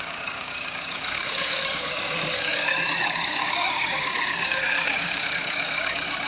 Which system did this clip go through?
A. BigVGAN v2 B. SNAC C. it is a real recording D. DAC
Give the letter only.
D